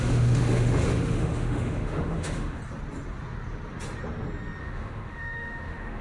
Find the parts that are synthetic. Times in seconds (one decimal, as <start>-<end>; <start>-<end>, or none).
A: 0.0-2.6; 4.6-6.0